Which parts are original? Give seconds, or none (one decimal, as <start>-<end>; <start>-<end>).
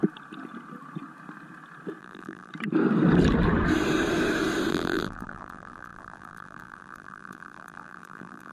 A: 0.0-2.0; 2.5-4.7